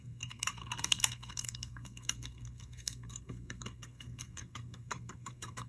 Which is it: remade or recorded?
remade